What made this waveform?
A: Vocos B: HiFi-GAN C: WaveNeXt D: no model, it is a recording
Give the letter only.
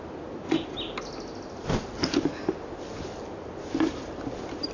D